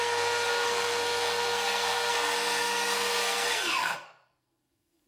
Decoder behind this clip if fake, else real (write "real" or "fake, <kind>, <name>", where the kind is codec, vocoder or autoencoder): fake, codec, SNAC